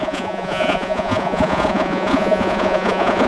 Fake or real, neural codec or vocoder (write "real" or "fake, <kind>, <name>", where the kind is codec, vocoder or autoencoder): fake, vocoder, Vocos